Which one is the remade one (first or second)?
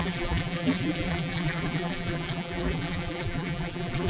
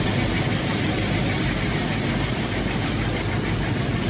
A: first